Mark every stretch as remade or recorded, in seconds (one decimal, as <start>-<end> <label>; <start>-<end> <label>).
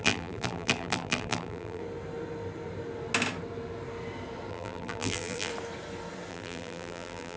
0.0-1.8 remade; 1.8-4.5 recorded; 4.5-5.5 remade; 5.5-6.3 recorded; 6.3-7.4 remade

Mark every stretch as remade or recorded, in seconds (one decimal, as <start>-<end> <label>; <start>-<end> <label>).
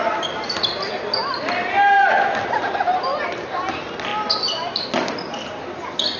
0.0-6.2 recorded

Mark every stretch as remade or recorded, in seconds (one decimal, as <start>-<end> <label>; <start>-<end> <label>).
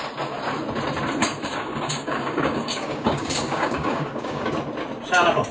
0.0-1.2 recorded; 1.2-4.5 remade; 4.5-5.5 recorded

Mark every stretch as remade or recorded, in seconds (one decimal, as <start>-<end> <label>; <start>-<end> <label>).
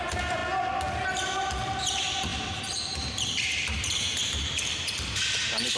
0.0-0.4 remade; 0.4-1.8 recorded; 1.8-5.8 remade